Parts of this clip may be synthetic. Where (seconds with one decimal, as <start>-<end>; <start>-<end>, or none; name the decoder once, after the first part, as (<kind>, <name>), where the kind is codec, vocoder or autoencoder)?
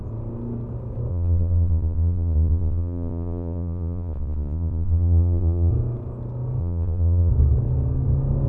1.1-5.7 (vocoder, Vocos); 6.6-7.3